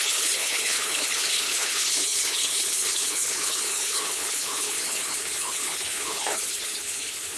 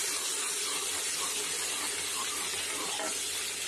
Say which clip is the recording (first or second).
second